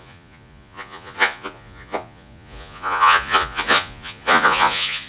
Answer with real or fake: fake